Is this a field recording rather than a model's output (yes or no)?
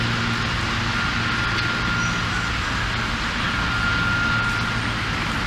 yes